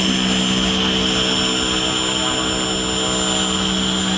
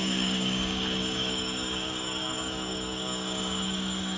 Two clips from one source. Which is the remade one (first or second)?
second